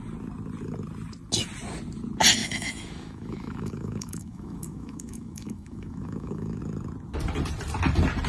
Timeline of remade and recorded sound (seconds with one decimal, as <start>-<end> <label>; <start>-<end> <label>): 0.0-2.4 recorded; 2.4-6.6 remade; 6.6-8.3 recorded